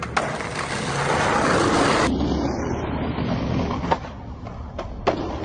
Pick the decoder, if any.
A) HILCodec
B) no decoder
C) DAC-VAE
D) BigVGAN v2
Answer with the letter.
B